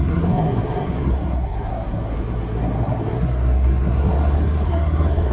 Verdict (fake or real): fake